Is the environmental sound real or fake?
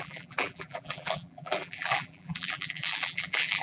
fake